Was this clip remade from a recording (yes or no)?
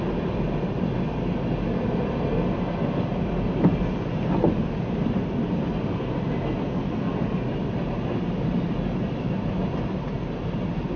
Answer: no